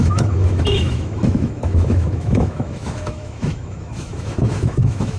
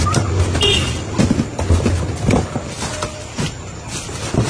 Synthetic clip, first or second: first